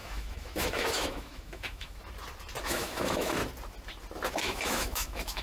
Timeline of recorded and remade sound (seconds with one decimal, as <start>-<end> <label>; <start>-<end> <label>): 0.0-2.0 remade; 2.0-2.6 recorded; 2.6-3.4 remade; 3.4-4.3 recorded; 4.3-5.4 remade